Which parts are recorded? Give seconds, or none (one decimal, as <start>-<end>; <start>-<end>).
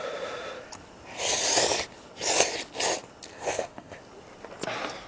0.0-3.3; 4.0-5.1